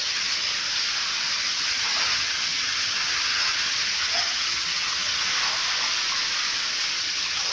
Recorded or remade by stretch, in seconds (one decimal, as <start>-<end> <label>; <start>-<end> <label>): 0.0-0.5 remade; 0.5-1.4 recorded; 1.4-5.3 remade; 5.3-7.0 recorded; 7.0-7.5 remade